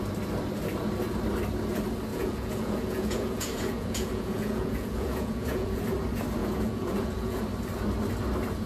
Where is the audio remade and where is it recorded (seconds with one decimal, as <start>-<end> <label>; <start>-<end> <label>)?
0.0-2.1 recorded; 2.1-5.8 remade; 5.8-6.4 recorded; 6.4-7.4 remade; 7.4-8.7 recorded